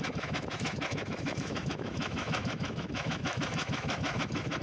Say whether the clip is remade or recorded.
remade